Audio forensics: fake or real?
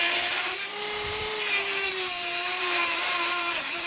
fake